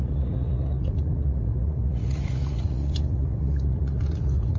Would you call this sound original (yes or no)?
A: no